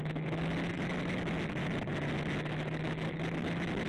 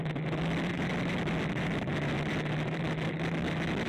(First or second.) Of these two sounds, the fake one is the second